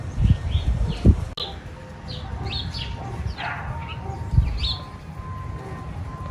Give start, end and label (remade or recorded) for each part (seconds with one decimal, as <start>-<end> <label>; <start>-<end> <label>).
0.0-6.3 recorded